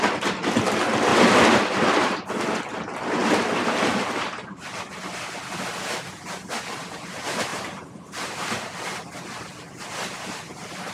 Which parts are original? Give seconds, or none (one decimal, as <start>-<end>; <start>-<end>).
0.0-1.1; 2.4-3.2; 4.9-7.5; 8.4-10.9